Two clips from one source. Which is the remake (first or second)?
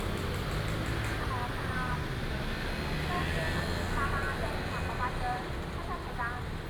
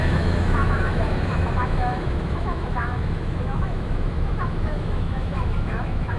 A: second